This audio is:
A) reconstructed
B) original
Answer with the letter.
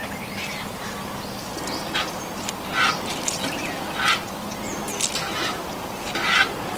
B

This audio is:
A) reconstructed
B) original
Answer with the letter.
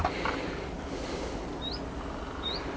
B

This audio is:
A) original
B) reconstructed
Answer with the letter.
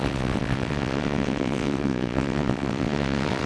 B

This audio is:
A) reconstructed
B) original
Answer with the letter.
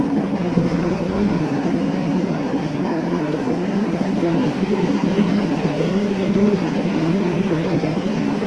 A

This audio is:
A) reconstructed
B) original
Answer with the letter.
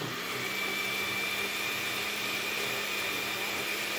B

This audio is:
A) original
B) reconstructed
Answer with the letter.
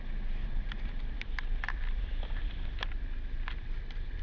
A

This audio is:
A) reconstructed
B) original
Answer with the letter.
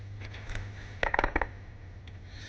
B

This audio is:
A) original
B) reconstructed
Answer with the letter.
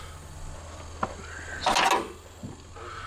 A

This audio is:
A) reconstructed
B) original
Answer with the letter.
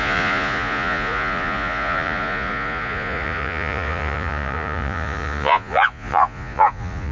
A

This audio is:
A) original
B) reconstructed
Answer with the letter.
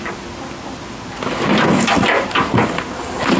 A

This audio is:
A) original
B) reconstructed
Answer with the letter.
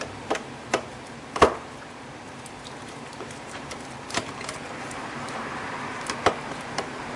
B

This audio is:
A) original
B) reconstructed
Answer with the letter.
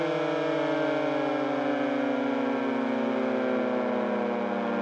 A